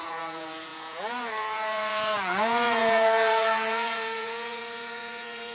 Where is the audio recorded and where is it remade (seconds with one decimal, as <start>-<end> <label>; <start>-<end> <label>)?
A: 0.0-5.5 remade